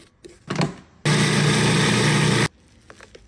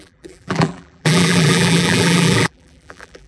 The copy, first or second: second